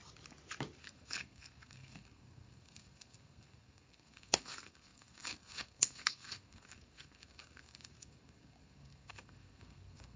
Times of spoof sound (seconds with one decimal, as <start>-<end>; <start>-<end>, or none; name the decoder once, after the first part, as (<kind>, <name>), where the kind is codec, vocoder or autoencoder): 0.8-10.2 (codec, SNAC)